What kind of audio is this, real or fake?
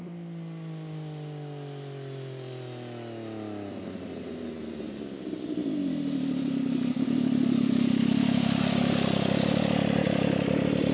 real